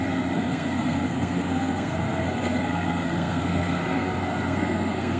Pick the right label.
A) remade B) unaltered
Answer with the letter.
A